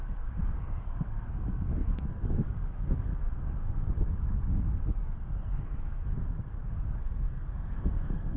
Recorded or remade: remade